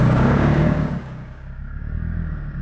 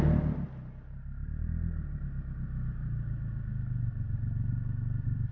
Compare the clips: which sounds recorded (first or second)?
second